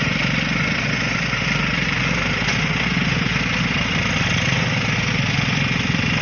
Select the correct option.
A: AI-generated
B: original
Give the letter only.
B